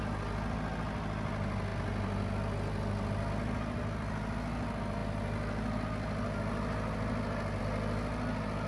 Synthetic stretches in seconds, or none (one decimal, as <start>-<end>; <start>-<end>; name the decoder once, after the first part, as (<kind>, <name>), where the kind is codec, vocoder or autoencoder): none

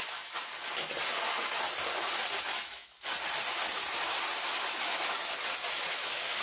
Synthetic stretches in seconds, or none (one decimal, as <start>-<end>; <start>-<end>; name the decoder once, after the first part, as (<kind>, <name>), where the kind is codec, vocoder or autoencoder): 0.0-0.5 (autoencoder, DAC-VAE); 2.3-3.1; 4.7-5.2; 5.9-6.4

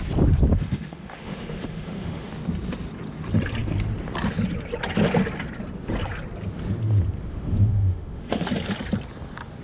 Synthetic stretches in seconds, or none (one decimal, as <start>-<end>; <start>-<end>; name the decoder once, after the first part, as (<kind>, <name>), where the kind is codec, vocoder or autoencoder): 0.5-2.3 (autoencoder, DAC-VAE); 7.3-8.5

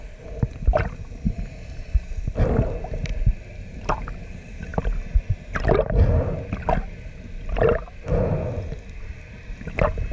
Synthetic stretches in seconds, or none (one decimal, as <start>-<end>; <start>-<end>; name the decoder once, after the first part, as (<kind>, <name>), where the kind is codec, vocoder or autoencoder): none

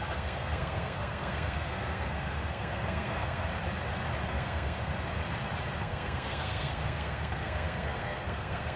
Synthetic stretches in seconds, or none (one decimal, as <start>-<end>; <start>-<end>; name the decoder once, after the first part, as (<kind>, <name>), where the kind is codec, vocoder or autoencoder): 0.0-3.5 (codec, SNAC); 4.3-4.9; 5.8-8.8

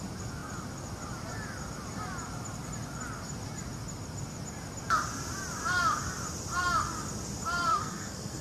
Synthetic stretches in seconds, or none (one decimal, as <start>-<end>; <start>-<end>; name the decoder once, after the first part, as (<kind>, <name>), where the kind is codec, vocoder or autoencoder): 7.7-8.4 (codec, SNAC)

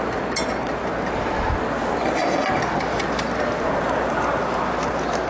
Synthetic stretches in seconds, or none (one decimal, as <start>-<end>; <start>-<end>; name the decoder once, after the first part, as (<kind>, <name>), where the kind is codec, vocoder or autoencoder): none